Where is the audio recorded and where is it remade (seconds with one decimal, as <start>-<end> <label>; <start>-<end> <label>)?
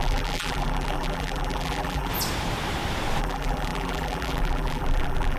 0.0-2.1 remade; 2.1-3.2 recorded; 3.2-5.4 remade